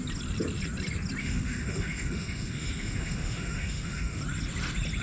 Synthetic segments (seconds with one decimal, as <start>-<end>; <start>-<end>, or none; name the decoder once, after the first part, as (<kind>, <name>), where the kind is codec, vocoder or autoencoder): 1.2-4.2 (autoencoder, DAC-VAE)